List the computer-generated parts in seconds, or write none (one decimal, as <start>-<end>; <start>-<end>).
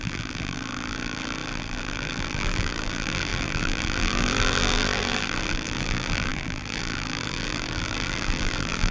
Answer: 0.0-8.9